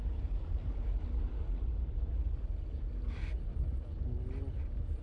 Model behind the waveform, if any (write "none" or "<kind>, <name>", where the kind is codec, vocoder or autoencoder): none